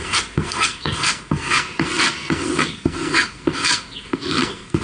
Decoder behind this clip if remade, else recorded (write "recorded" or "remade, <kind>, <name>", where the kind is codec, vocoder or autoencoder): remade, codec, SNAC